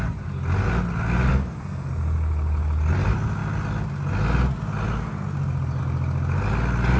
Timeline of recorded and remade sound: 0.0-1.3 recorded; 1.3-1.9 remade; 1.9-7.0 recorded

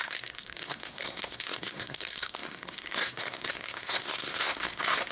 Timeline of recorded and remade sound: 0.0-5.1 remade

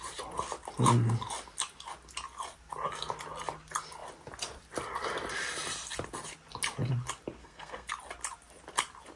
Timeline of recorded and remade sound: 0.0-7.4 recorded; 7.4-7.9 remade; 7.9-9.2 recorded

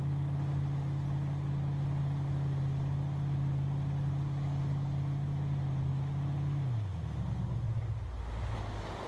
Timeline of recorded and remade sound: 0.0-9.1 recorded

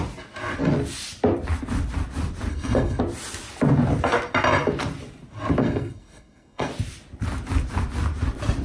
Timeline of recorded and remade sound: 0.0-2.5 recorded; 2.5-3.0 remade; 3.0-5.6 recorded; 5.6-6.7 remade; 6.7-8.6 recorded

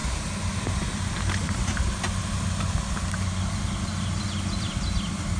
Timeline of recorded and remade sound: 0.0-5.4 recorded

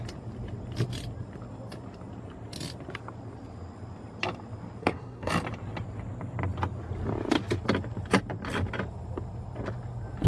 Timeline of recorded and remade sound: 0.0-4.8 recorded; 4.8-5.3 remade; 5.3-10.3 recorded

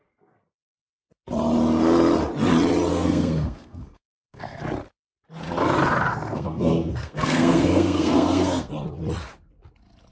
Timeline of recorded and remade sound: 0.0-2.9 recorded; 2.9-4.6 remade; 4.6-6.1 recorded; 6.1-8.7 remade; 8.7-10.1 recorded